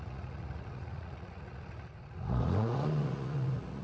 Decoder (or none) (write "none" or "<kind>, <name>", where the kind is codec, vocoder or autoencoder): vocoder, Vocos